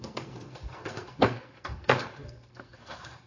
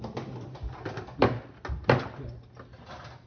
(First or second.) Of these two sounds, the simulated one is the first